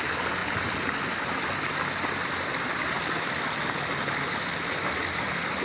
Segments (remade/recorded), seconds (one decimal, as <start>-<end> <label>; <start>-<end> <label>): 0.0-5.6 recorded